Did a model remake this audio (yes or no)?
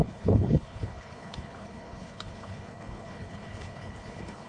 yes